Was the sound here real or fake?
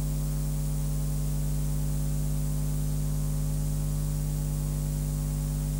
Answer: real